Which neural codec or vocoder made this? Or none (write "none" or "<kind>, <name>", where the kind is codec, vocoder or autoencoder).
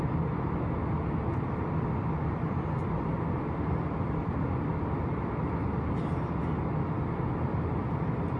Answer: none